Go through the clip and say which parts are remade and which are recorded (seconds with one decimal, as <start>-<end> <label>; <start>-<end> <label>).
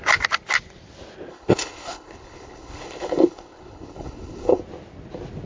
0.0-1.3 recorded; 1.3-4.6 remade; 4.6-5.5 recorded